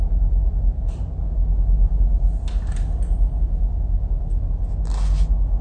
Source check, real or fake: real